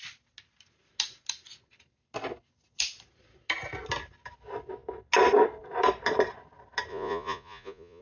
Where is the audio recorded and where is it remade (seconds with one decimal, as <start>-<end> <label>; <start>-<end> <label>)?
0.0-6.9 recorded; 6.9-8.0 remade